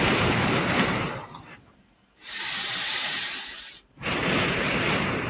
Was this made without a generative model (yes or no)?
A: no